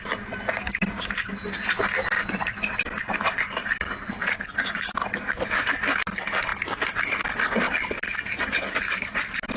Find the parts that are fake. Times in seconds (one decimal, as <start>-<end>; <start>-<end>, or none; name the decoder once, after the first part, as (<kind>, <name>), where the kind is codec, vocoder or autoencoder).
none